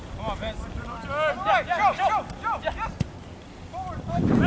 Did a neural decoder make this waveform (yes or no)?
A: no